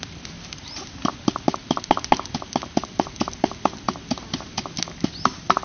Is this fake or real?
real